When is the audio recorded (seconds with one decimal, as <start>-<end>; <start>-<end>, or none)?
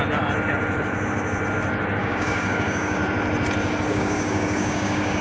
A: 0.0-2.0; 3.0-3.9